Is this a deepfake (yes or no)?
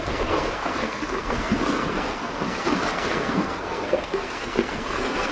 yes